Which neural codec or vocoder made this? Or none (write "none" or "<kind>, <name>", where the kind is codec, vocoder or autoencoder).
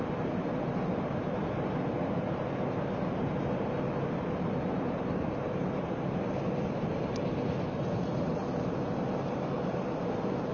none